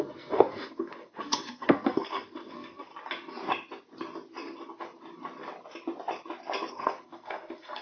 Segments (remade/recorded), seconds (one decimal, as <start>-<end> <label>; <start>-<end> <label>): 0.0-2.9 remade; 2.9-6.7 recorded; 6.7-7.8 remade